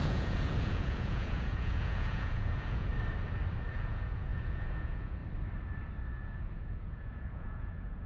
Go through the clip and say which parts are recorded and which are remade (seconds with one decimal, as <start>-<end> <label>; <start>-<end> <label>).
0.0-2.9 remade; 2.9-3.7 recorded; 3.7-5.2 remade; 5.2-6.1 recorded; 6.1-8.1 remade